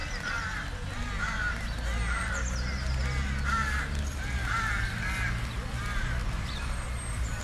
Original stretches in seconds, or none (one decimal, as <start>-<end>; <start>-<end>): 0.0-6.2